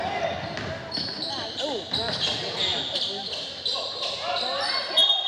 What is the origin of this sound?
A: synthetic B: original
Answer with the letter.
B